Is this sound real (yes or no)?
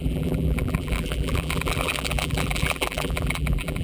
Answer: no